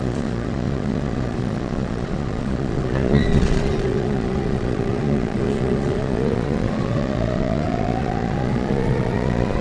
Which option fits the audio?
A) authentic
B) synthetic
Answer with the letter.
B